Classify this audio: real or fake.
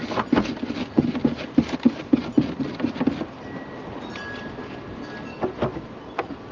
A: real